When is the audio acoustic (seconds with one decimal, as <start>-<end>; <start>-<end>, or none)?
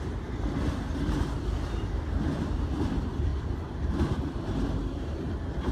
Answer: 0.0-5.7